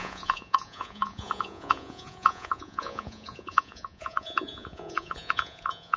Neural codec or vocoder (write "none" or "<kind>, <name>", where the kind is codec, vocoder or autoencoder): vocoder, Vocos